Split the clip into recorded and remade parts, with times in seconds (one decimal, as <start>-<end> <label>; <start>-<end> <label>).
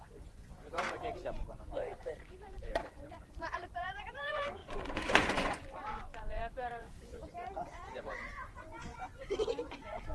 0.0-10.1 remade